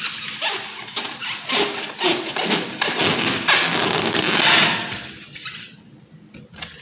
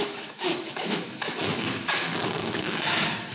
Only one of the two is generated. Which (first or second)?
second